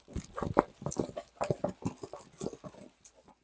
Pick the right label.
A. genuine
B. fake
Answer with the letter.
A